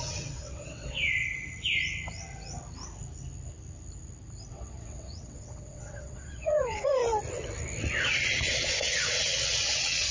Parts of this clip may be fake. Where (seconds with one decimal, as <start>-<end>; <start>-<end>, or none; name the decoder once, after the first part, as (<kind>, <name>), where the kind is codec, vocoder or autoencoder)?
0.0-1.1 (vocoder, WaveNeXt); 4.5-7.0; 8.4-10.1